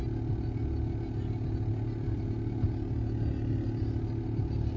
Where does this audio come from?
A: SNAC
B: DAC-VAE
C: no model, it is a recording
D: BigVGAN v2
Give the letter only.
C